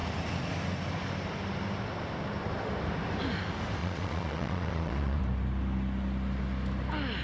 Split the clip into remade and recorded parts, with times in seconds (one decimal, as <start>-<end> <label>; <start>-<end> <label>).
0.0-3.8 recorded; 3.8-5.2 remade; 5.2-7.2 recorded